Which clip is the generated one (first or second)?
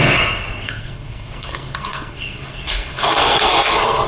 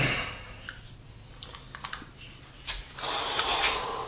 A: first